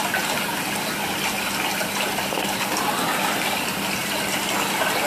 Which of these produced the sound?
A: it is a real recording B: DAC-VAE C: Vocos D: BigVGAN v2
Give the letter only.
A